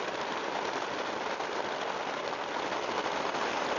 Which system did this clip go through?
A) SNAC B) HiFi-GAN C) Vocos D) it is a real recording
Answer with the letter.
D